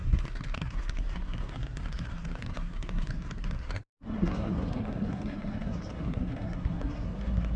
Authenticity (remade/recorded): remade